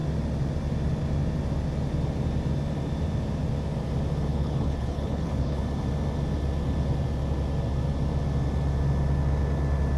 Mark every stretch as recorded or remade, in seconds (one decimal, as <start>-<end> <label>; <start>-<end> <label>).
0.0-4.3 recorded; 4.3-5.6 remade; 5.6-10.0 recorded